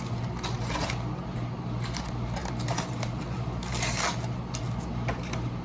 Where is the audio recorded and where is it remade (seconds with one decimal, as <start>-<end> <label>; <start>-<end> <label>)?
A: 0.0-5.6 recorded